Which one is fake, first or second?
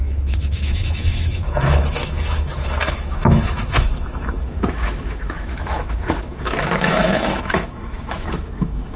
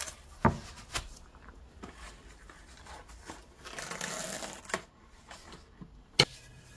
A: first